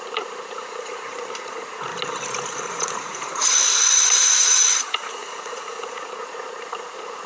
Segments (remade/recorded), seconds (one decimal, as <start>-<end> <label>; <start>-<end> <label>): 0.0-1.9 remade; 1.9-2.6 recorded; 2.6-7.3 remade